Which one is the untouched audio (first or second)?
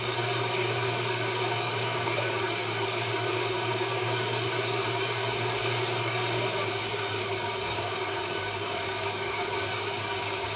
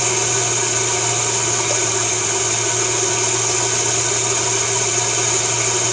second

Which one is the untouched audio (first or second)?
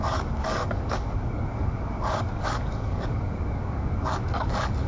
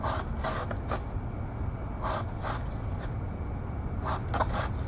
second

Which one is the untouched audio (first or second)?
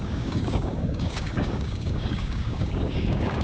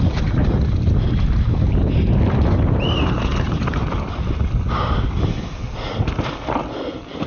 second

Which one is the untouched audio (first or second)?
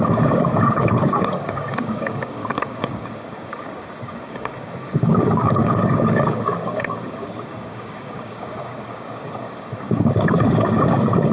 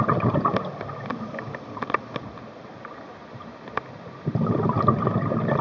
second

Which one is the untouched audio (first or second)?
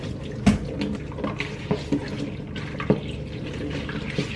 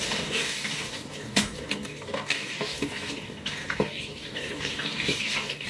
first